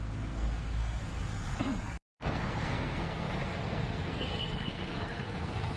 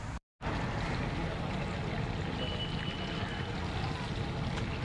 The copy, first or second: first